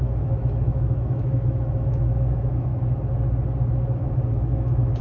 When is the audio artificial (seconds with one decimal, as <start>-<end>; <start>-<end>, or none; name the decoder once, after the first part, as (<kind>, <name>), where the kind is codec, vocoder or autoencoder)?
0.0-2.7 (autoencoder, DAC-VAE); 4.3-5.0